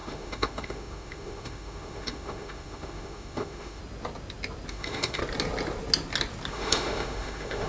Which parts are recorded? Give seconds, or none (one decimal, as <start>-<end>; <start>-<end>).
3.8-4.7; 5.2-6.5